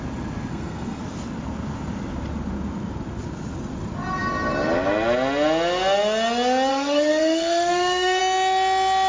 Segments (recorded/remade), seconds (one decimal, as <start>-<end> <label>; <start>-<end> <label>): 0.0-0.5 recorded; 0.5-1.0 remade; 1.0-6.7 recorded; 6.7-8.2 remade; 8.2-9.1 recorded